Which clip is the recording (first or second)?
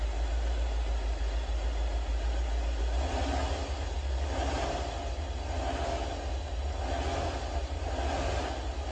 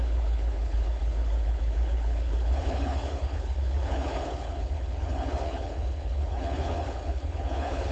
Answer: first